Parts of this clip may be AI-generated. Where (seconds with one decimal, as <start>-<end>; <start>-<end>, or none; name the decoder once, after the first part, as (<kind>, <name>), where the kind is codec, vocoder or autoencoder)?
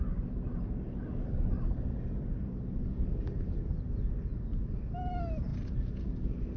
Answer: none